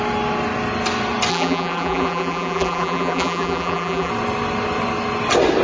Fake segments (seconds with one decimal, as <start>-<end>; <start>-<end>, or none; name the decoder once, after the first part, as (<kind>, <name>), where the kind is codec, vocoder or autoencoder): 1.3-4.1 (vocoder, BigVGAN v2)